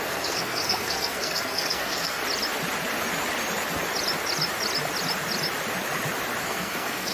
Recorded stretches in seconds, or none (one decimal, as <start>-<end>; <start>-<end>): 2.2-6.4